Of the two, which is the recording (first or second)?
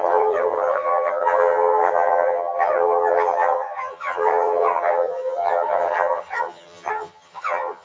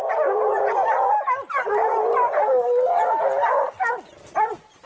second